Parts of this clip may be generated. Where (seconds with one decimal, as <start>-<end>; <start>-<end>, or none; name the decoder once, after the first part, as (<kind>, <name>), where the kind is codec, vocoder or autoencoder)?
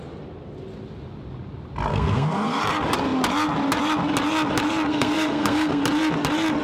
1.9-2.6 (codec, SNAC); 4.9-5.8